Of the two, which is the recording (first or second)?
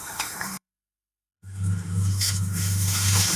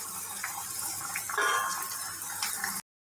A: second